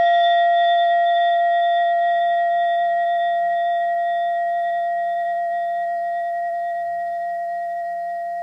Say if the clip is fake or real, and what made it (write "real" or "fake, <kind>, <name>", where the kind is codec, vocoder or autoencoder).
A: fake, vocoder, BigVGAN v2